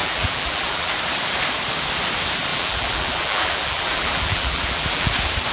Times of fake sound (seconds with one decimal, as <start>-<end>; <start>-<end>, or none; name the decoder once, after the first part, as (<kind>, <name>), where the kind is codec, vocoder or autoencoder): 0.0-0.9 (vocoder, BigVGAN v2); 2.5-5.1